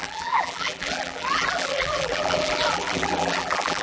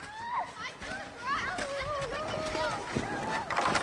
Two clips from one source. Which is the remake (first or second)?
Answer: first